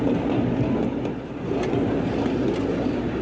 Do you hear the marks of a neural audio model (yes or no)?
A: no